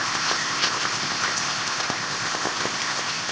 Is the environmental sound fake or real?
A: fake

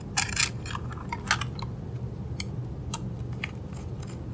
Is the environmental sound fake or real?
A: real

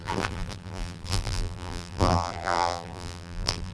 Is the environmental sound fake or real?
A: fake